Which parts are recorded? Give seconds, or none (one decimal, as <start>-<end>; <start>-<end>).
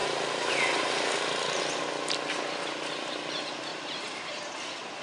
0.0-3.7; 4.3-5.0